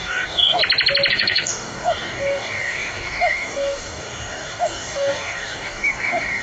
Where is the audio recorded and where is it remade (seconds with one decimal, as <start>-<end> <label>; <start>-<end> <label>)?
0.0-0.6 remade; 0.6-1.1 recorded; 1.1-6.4 remade